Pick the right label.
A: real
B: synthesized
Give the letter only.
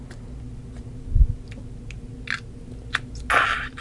A